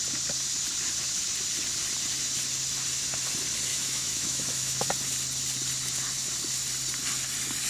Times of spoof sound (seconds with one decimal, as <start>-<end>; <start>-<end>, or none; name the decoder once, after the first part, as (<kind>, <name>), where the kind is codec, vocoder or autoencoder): 3.7-4.9 (autoencoder, DAC-VAE)